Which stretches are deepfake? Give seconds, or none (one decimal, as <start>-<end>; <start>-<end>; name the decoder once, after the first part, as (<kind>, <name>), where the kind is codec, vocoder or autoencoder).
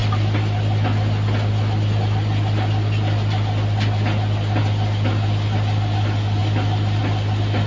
none